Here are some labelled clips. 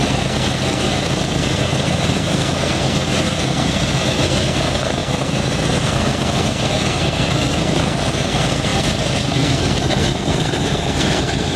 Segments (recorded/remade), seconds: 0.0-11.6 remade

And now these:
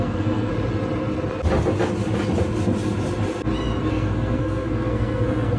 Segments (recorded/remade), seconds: 0.0-0.5 remade; 0.5-3.9 recorded; 3.9-5.6 remade

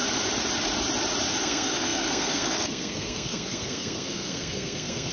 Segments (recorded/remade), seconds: 0.0-1.4 recorded; 1.4-5.1 remade